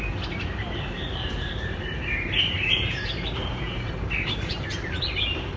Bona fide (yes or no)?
no